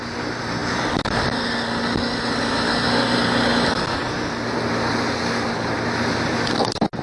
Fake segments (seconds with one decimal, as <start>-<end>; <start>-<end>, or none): none